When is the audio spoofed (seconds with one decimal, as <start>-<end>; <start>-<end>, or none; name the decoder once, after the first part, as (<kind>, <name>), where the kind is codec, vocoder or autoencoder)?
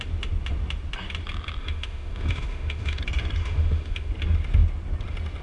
1.6-3.0 (autoencoder, DAC-VAE); 3.4-4.1